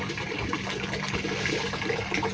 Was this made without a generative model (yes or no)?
yes